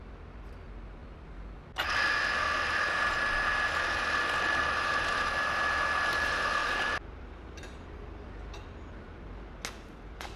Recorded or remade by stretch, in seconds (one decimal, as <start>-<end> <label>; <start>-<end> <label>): 0.0-6.6 recorded; 6.6-7.9 remade; 7.9-10.4 recorded